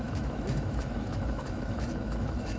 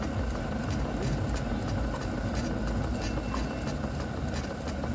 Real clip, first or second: second